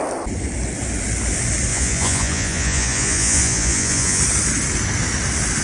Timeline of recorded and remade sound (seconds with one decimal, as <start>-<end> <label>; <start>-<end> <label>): 0.0-1.7 recorded; 1.7-4.2 remade; 4.2-5.6 recorded